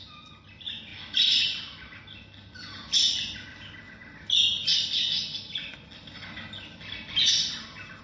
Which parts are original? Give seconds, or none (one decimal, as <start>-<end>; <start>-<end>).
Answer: 0.0-8.0